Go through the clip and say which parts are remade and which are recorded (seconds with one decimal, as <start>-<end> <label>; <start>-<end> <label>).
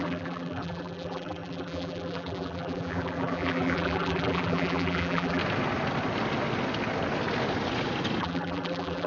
0.0-5.4 remade; 5.4-8.2 recorded; 8.2-9.1 remade